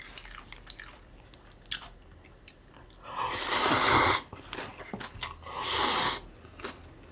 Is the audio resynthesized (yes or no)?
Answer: no